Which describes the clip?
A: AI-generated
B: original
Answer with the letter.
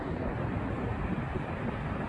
B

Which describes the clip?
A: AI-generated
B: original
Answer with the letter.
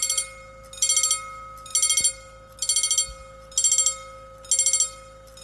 B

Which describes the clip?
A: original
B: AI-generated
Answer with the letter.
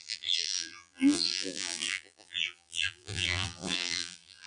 B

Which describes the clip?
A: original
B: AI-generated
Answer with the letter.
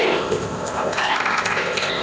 B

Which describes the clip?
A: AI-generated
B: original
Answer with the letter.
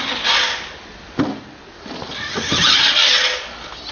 B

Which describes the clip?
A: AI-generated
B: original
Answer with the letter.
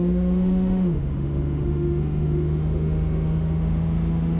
A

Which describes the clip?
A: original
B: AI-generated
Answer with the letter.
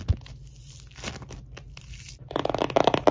A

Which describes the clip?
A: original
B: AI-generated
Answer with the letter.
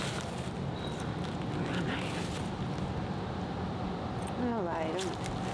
A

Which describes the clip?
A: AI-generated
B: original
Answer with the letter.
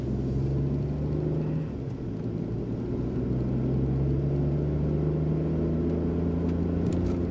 B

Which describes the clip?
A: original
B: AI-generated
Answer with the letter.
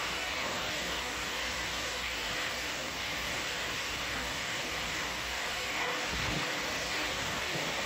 B